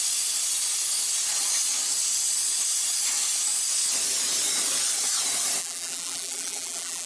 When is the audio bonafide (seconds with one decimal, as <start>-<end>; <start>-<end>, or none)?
0.0-5.6